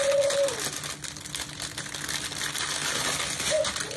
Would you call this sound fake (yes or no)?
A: no